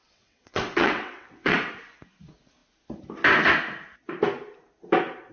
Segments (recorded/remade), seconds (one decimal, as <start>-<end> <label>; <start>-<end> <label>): 0.0-1.7 remade; 1.7-5.3 recorded